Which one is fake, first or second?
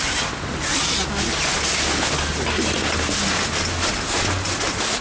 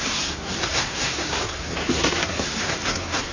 second